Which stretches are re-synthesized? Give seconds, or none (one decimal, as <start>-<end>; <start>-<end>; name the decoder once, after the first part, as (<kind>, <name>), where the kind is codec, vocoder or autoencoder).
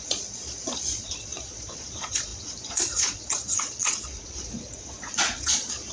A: 0.0-5.9 (vocoder, Vocos)